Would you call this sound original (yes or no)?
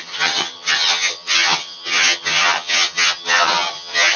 no